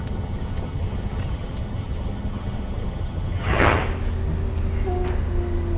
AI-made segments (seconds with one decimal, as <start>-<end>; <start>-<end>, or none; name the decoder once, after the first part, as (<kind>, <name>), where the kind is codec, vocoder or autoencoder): 0.0-3.8 (vocoder, HiFi-GAN)